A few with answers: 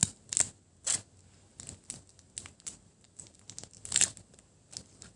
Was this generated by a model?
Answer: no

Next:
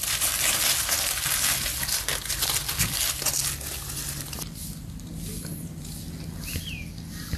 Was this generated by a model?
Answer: no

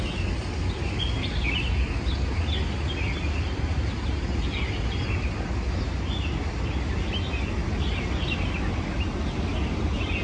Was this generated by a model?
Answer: no